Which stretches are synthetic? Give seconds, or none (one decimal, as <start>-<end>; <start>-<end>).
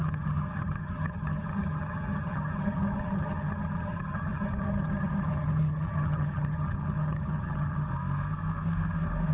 0.0-7.9